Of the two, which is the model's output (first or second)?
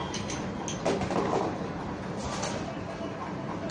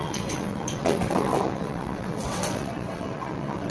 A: second